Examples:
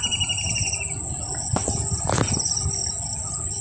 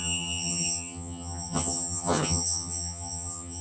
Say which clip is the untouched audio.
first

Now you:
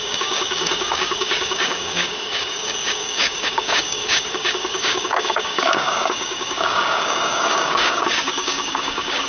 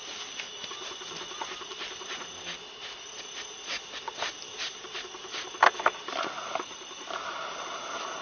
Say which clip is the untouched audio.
second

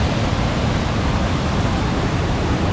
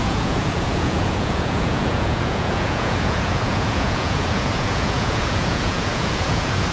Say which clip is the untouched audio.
first